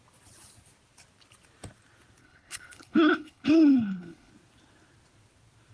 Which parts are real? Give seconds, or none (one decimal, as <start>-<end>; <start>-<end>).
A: 0.0-2.2; 4.3-5.7